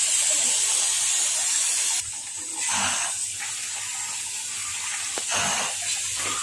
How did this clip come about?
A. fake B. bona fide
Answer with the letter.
B